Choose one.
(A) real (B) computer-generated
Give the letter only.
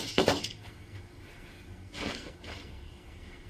B